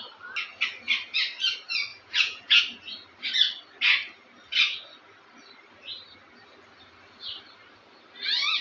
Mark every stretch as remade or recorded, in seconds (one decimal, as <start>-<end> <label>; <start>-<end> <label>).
0.0-1.9 recorded; 1.9-2.6 remade; 2.6-8.6 recorded